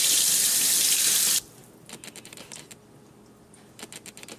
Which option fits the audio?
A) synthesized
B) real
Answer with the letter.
B